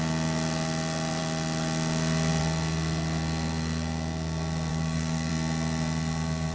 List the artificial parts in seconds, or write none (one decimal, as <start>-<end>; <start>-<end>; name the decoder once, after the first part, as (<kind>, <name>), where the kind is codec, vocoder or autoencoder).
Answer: 4.7-5.3 (codec, DAC)